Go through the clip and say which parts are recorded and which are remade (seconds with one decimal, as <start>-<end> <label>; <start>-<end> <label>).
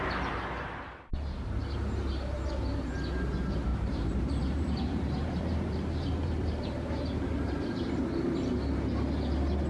0.0-3.7 recorded; 3.7-8.0 remade; 8.0-9.7 recorded